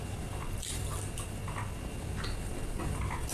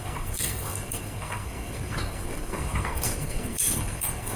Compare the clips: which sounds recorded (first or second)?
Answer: first